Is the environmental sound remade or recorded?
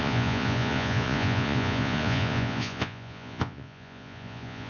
remade